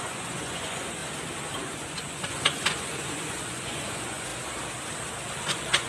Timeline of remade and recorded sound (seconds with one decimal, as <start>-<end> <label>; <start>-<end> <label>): 0.0-1.0 remade; 1.0-1.6 recorded; 1.6-4.3 remade; 4.3-5.4 recorded; 5.4-5.9 remade